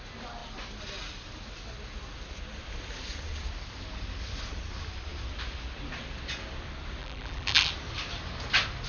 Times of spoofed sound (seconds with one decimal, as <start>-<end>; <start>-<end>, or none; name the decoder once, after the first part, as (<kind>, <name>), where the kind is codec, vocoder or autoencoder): 7.0-7.7 (vocoder, BigVGAN v2)